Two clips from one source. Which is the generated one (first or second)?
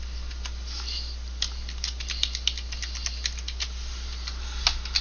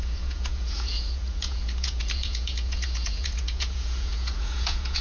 second